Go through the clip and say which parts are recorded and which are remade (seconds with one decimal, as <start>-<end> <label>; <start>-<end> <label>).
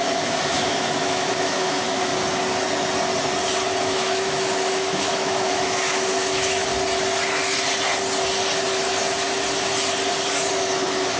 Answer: 0.0-2.1 remade; 2.1-3.8 recorded; 3.8-6.7 remade; 6.7-10.5 recorded; 10.5-11.2 remade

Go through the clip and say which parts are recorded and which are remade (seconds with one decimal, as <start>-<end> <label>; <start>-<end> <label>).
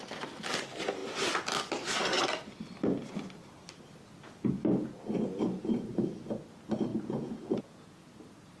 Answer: 0.0-6.9 recorded; 6.9-8.1 remade; 8.1-8.6 recorded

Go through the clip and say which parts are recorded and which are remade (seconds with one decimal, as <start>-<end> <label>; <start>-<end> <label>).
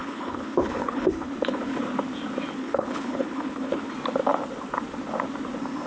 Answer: 0.0-1.8 remade; 1.8-2.6 recorded; 2.6-3.9 remade; 3.9-5.9 recorded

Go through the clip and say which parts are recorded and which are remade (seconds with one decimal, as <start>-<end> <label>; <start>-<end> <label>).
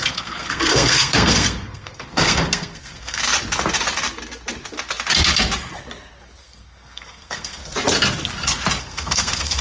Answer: 0.0-3.2 remade; 3.2-6.4 recorded; 6.4-7.6 remade; 7.6-8.8 recorded; 8.8-9.6 remade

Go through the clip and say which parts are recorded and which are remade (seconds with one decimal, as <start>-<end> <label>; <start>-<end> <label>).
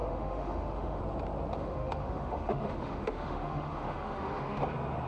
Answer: 0.0-1.0 remade; 1.0-1.6 recorded; 1.6-4.6 remade; 4.6-5.1 recorded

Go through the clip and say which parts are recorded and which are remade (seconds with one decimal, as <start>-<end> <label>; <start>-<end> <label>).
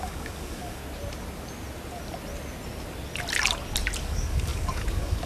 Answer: 0.0-0.8 remade; 0.8-4.0 recorded; 4.0-5.3 remade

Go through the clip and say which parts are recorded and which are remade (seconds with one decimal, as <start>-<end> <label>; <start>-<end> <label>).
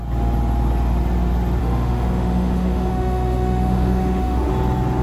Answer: 0.0-1.6 recorded; 1.6-4.5 remade; 4.5-5.0 recorded